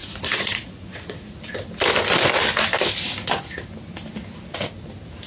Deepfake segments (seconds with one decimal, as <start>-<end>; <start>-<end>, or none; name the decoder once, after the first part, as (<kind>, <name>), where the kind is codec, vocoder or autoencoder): 0.0-1.4 (vocoder, Vocos)